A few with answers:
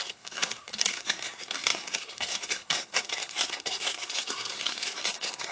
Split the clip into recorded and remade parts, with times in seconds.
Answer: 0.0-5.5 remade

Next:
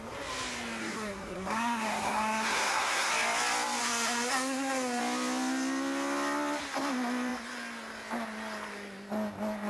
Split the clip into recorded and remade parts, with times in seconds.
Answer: 0.0-0.8 recorded; 0.8-3.1 remade; 3.1-3.8 recorded; 3.8-5.0 remade; 5.0-9.7 recorded